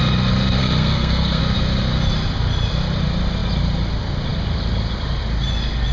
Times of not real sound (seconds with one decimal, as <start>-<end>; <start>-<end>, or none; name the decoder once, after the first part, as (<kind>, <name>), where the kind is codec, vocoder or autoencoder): 0.6-1.4 (codec, SNAC)